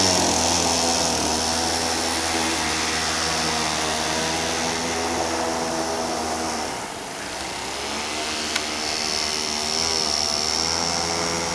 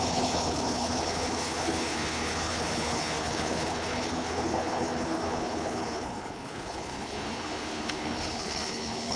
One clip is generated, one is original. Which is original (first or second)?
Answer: first